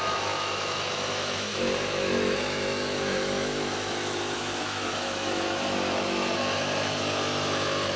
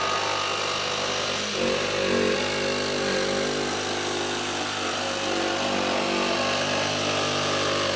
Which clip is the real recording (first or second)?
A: second